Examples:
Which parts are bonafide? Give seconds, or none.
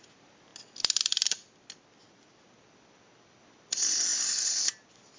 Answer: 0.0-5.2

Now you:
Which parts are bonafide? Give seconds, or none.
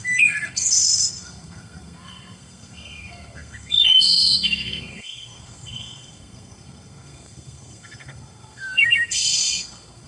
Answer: none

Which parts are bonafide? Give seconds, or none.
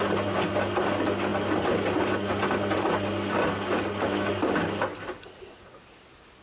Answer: 0.0-6.4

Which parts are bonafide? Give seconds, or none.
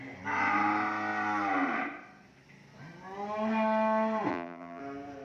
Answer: 0.0-4.3; 4.8-5.2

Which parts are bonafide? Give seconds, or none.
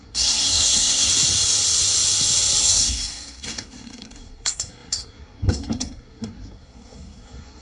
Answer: 1.1-2.6